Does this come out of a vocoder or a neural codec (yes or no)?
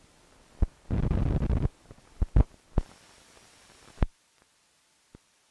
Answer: no